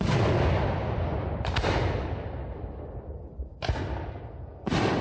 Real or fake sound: real